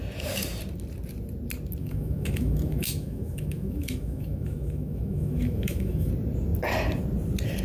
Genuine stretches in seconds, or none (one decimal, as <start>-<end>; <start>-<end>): 0.0-1.8; 6.1-7.6